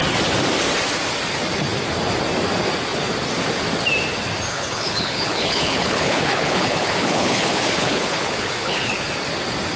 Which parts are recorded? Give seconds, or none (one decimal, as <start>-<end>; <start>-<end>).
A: 0.0-4.5; 9.0-9.8